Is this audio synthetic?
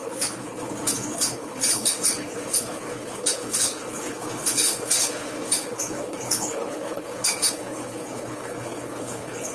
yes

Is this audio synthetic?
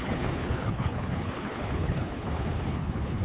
yes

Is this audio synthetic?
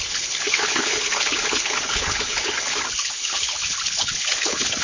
yes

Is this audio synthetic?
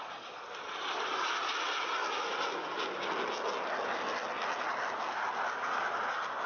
no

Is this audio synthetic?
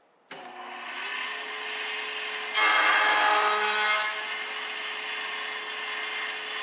no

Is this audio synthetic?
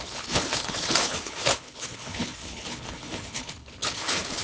yes